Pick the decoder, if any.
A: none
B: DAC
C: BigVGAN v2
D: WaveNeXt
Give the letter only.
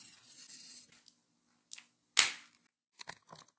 A